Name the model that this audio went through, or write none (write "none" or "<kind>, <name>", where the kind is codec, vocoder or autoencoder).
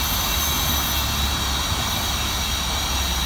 none